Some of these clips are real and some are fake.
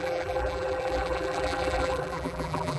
fake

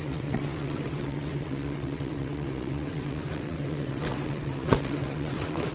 fake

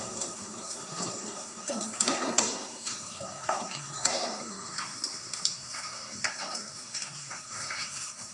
fake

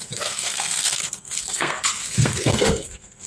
fake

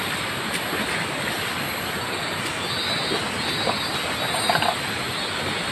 real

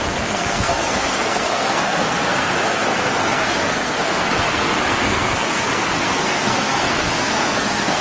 fake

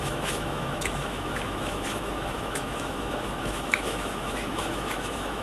fake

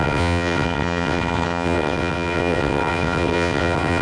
fake